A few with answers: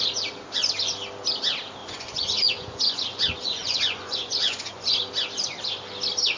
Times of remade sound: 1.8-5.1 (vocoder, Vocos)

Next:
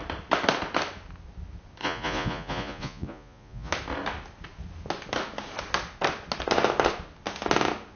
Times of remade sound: 1.8-3.7 (vocoder, Vocos)